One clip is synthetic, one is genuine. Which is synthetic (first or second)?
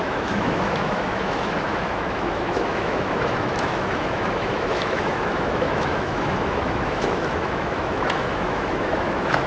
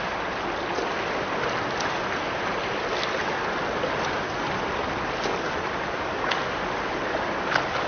first